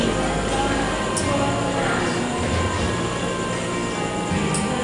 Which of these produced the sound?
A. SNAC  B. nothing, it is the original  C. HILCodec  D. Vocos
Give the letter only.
B